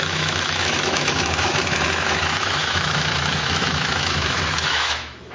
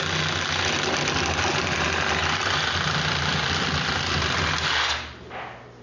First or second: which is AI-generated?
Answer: first